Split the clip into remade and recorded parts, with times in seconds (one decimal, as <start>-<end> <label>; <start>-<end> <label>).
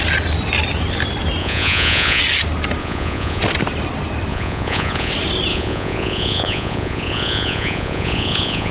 0.0-1.4 recorded; 1.4-2.2 remade; 2.2-2.8 recorded; 2.8-3.4 remade; 3.4-4.3 recorded; 4.3-5.1 remade; 5.1-5.5 recorded; 5.5-8.7 remade